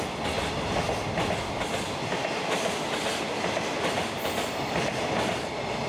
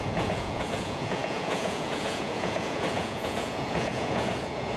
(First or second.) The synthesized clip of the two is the second